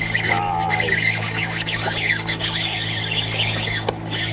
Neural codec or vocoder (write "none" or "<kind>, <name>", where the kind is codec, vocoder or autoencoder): codec, DAC